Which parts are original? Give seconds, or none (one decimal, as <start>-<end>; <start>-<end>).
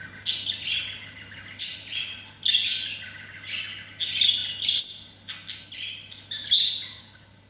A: 0.0-7.5